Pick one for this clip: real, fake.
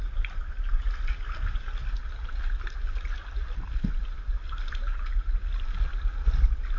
real